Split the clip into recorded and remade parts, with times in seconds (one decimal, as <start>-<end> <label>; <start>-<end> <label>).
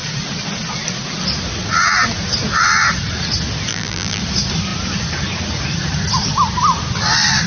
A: 0.0-3.7 recorded; 3.7-4.2 remade; 4.2-7.5 recorded